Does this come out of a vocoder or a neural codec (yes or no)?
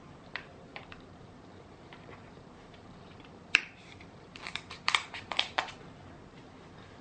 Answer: yes